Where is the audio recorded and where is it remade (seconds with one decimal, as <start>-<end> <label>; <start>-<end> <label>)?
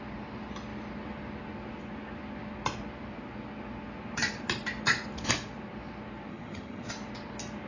0.0-6.3 recorded; 6.3-6.9 remade; 6.9-7.7 recorded